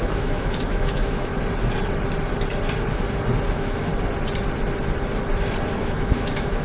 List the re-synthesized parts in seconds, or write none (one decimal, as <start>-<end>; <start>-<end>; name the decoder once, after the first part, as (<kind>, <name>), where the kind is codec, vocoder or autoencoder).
0.0-1.3 (autoencoder, DAC-VAE); 3.5-3.9; 5.8-6.6